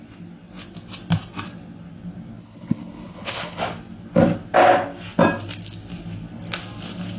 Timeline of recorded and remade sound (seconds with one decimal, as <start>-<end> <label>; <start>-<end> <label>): 0.0-2.4 recorded; 2.4-3.6 remade; 3.6-7.2 recorded